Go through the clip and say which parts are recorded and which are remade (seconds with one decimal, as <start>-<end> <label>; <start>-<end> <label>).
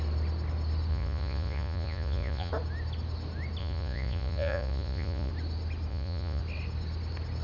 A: 0.0-0.9 recorded; 0.9-2.5 remade; 2.5-3.6 recorded; 3.6-5.3 remade; 5.3-5.9 recorded; 5.9-6.4 remade; 6.4-7.4 recorded